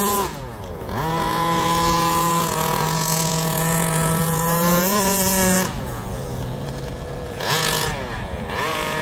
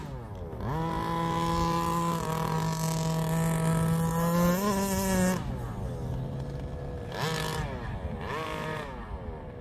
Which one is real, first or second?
second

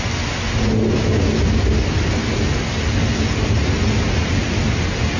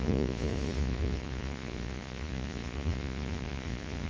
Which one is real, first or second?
first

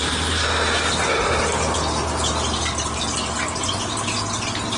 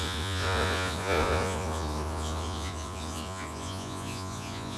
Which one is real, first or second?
first